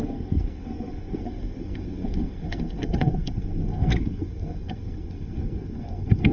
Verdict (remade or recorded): remade